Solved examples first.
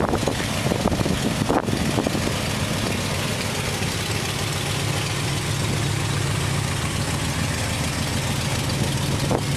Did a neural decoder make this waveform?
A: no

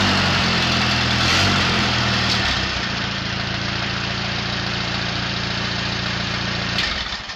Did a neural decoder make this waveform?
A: no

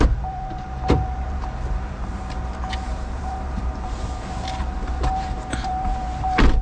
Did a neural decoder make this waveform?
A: yes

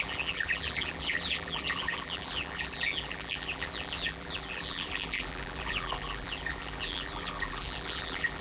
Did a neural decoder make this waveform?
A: yes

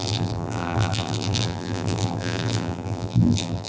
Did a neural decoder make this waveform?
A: yes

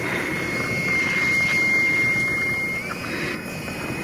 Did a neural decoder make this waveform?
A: no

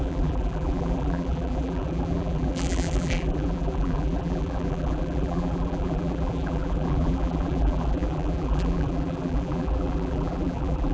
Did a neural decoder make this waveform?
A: yes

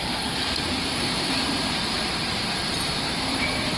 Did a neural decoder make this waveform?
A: yes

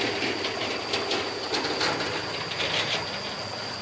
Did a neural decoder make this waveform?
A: no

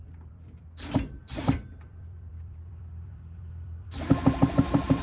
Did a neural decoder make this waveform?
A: yes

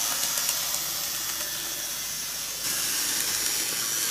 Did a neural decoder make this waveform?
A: no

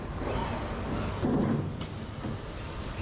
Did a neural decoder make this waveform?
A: no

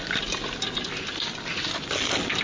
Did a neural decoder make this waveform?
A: no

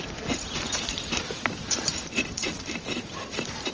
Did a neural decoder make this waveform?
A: yes